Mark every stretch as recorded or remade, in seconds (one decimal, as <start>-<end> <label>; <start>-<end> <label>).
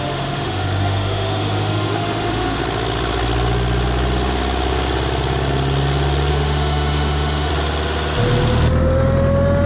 0.0-2.6 remade; 2.6-6.3 recorded; 6.3-7.5 remade; 7.5-9.7 recorded